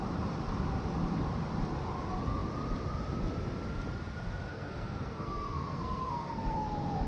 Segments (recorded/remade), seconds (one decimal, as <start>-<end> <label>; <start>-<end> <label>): 0.0-4.5 recorded; 4.5-7.1 remade